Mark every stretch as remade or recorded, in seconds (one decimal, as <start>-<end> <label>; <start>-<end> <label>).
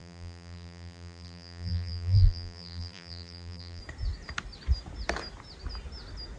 0.0-3.8 remade; 3.8-6.4 recorded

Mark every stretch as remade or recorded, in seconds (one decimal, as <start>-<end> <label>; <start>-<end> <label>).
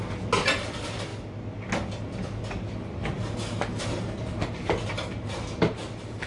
0.0-6.3 recorded